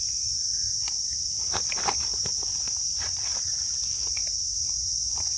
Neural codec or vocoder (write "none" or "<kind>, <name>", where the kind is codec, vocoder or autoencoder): none